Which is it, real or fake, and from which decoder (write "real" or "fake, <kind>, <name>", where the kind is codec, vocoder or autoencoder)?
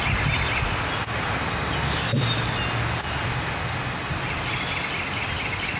real